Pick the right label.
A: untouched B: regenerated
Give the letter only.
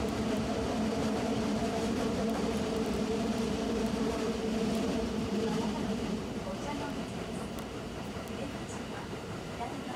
B